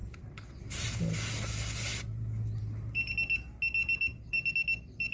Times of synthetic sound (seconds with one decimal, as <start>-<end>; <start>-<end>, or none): 0.0-0.8; 1.9-3.1; 3.8-4.5